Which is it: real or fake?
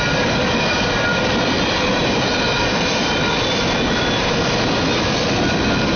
real